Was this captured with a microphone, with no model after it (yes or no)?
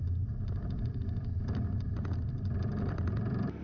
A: no